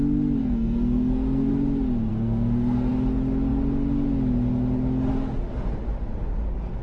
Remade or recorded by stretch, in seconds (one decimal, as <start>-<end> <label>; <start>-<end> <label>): 0.0-0.4 recorded; 0.4-1.5 remade; 1.5-2.1 recorded; 2.1-2.9 remade; 2.9-6.8 recorded